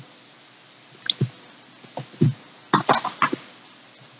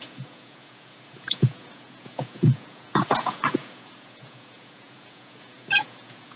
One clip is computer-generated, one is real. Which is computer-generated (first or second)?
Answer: second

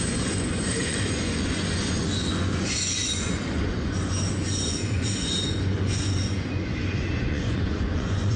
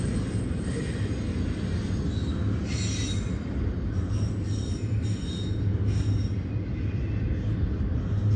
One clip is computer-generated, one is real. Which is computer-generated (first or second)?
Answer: first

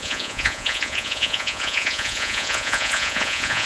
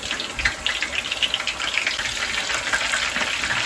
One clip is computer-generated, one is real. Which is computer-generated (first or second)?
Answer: first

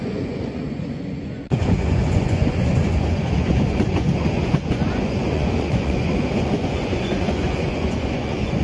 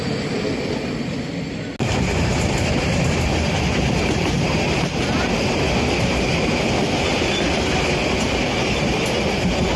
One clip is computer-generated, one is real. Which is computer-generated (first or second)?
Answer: first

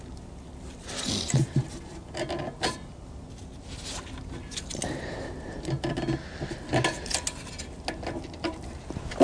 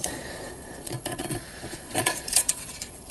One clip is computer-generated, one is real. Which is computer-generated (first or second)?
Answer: second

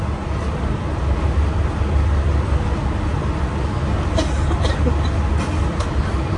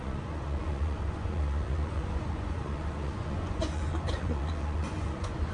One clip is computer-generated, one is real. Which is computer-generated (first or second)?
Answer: second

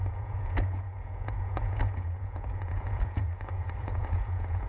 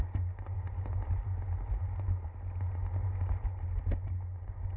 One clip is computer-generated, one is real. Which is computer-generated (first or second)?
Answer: first